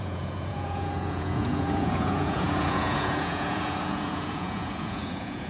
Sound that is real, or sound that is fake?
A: fake